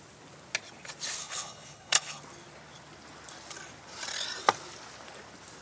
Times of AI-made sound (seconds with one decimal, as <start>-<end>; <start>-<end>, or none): 1.2-2.2